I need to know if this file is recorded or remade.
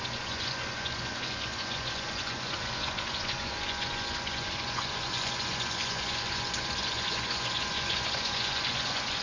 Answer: remade